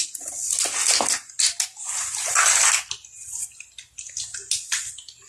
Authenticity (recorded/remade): recorded